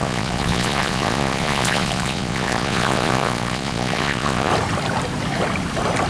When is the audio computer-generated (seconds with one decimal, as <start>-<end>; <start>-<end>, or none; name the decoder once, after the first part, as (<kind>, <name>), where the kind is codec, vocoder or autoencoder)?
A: 0.0-4.5 (vocoder, Vocos)